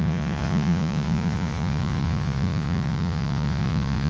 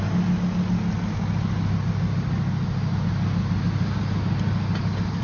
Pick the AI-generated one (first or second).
first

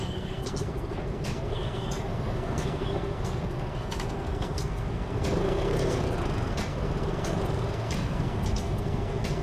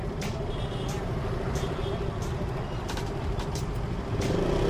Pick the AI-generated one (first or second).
first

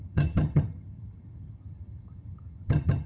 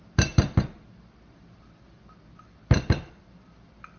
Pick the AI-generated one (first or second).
first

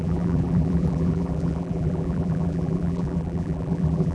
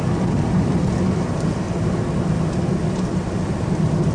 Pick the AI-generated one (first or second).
first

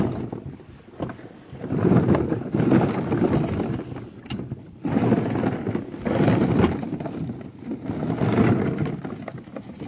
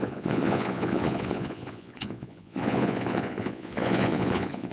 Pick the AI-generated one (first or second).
second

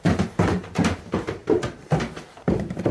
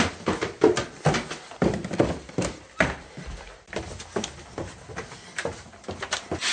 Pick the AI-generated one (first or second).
first